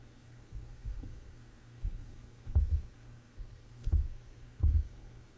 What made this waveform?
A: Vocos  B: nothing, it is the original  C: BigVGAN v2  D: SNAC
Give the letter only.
D